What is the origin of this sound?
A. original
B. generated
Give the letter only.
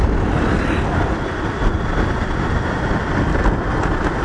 A